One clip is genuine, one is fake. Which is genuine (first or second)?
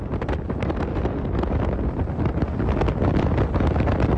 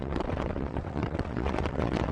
first